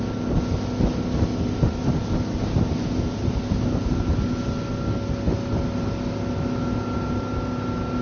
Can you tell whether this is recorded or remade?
recorded